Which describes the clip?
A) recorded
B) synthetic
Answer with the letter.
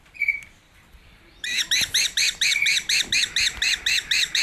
B